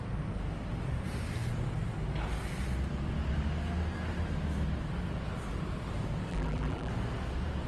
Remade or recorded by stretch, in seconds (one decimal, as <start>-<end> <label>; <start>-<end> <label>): 0.0-6.3 recorded; 6.3-6.9 remade; 6.9-7.7 recorded